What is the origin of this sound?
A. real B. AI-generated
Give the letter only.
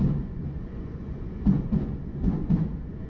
B